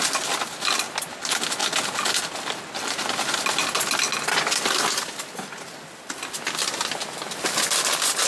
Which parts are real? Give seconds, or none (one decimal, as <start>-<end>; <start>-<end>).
0.0-8.3